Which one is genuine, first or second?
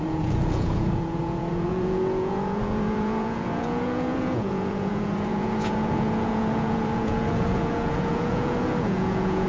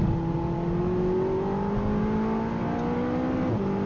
second